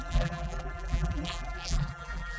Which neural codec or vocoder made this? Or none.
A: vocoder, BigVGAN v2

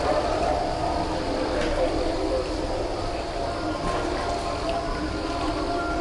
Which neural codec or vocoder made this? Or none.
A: none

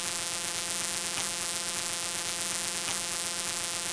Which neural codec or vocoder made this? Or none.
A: vocoder, BigVGAN v2